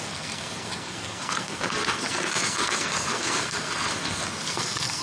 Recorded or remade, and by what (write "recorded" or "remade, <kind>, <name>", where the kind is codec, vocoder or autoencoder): remade, codec, SNAC